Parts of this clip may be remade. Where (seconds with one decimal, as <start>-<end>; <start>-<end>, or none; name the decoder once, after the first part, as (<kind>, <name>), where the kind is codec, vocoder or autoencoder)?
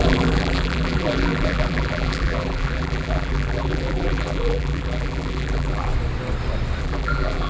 0.0-5.9 (vocoder, BigVGAN v2); 6.8-7.5